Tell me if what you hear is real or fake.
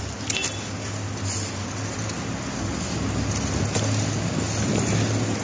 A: real